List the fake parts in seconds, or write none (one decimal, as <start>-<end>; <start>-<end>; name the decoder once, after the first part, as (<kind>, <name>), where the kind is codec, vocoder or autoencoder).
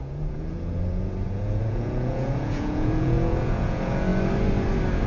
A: 0.0-4.1 (vocoder, Vocos)